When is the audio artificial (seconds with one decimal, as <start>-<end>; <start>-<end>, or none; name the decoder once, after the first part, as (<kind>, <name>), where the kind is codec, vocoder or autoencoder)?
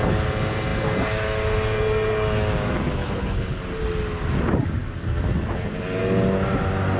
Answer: 3.0-3.6 (codec, HILCodec)